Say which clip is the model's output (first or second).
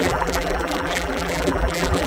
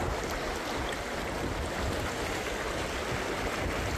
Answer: first